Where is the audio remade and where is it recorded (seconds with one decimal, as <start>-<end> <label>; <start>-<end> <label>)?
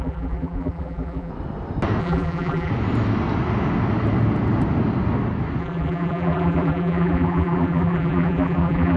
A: 0.0-1.3 remade; 1.3-2.0 recorded; 2.0-2.7 remade; 2.7-5.6 recorded; 5.6-9.0 remade